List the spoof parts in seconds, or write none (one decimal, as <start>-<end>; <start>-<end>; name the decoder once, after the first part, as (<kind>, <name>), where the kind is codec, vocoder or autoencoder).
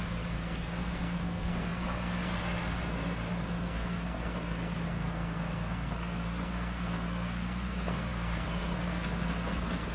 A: 0.0-9.9 (codec, SNAC)